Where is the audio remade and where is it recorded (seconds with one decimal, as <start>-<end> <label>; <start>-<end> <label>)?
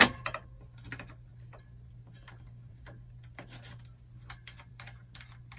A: 0.0-5.6 recorded